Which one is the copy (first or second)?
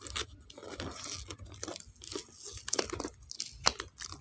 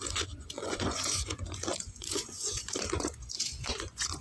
second